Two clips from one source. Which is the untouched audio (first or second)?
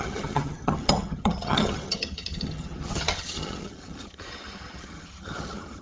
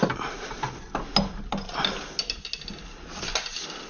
second